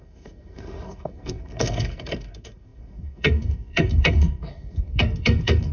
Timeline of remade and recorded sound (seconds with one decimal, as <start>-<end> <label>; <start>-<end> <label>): 0.0-5.7 remade